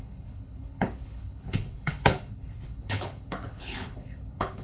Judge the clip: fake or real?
fake